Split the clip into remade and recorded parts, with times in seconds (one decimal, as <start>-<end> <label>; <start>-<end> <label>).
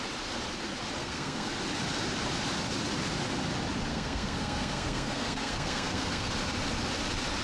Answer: 0.0-1.0 recorded; 1.0-1.5 remade; 1.5-3.9 recorded; 3.9-6.3 remade; 6.3-7.4 recorded